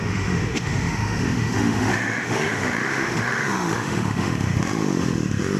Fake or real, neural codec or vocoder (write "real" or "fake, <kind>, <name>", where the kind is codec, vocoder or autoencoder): fake, autoencoder, DAC-VAE